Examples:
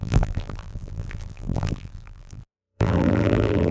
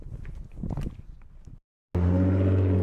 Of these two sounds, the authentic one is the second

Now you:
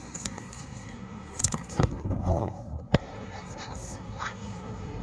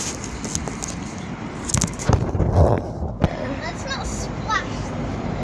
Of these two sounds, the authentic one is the second